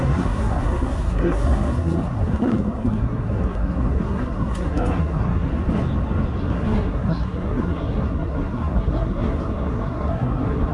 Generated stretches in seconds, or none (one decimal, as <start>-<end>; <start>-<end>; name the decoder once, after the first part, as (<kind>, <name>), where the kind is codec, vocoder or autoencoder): 0.0-5.5 (codec, SNAC); 6.4-10.7